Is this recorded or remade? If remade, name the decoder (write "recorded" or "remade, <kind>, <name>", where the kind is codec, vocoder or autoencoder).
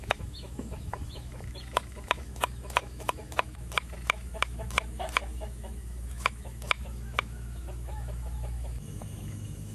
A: remade, autoencoder, DAC-VAE